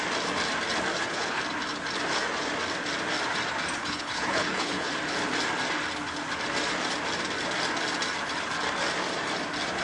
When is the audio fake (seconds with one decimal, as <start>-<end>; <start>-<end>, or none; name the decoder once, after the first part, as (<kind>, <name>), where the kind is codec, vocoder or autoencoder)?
0.9-1.4 (codec, HILCodec); 3.8-4.9

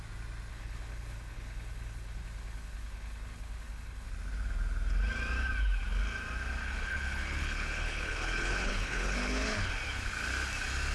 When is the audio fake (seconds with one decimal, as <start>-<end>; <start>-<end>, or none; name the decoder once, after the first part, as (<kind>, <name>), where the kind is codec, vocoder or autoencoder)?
0.5-4.1 (codec, HILCodec); 6.6-9.7

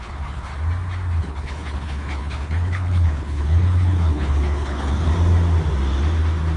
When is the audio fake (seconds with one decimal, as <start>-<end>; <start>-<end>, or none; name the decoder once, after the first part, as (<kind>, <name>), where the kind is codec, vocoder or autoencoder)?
0.0-0.5 (codec, HILCodec); 1.2-5.1

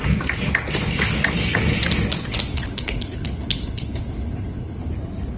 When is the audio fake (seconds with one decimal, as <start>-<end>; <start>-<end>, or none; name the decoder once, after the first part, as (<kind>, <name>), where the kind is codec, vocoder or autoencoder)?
2.5-4.9 (codec, HILCodec)

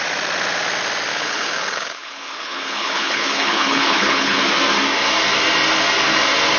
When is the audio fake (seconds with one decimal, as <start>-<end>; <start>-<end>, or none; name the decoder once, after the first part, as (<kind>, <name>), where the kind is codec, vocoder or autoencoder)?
1.1-4.4 (codec, HILCodec)

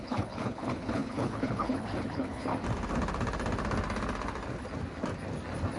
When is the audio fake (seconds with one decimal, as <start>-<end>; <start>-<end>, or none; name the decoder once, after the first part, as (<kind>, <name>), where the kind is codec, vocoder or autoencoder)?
0.0-2.5 (codec, HILCodec)